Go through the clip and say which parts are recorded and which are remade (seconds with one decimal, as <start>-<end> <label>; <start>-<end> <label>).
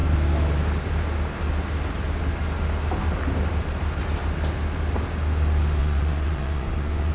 0.0-5.8 recorded; 5.8-7.1 remade